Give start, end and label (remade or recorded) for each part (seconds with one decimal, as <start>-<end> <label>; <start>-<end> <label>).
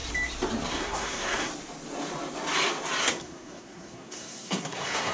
0.0-0.7 recorded; 0.7-1.5 remade; 1.5-3.0 recorded; 3.0-5.1 remade